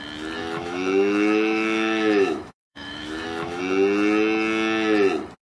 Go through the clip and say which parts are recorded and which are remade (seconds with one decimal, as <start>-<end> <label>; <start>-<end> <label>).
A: 0.0-0.4 recorded; 0.4-3.6 remade; 3.6-5.4 recorded